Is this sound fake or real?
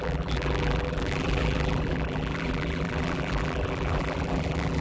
fake